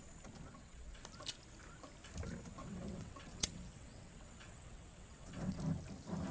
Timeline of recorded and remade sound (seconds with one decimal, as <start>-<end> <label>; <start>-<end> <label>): 0.0-0.5 recorded; 0.5-1.0 remade; 1.0-2.6 recorded; 2.6-5.6 remade; 5.6-6.3 recorded